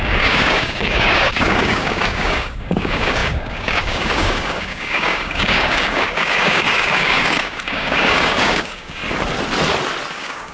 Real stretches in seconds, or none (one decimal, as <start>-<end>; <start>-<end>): 9.0-10.1